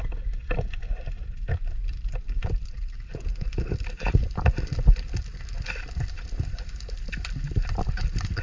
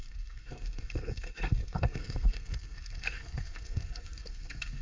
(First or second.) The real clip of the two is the first